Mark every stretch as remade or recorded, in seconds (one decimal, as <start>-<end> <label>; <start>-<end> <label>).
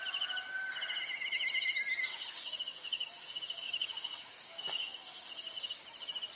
0.0-2.1 recorded; 2.1-5.8 remade; 5.8-6.4 recorded